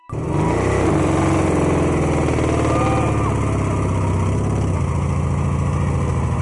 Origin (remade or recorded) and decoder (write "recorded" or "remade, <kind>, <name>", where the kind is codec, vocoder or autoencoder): recorded